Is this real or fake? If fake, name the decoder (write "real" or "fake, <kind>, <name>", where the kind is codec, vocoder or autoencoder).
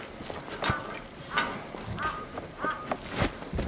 real